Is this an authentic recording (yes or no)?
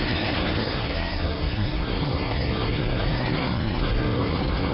no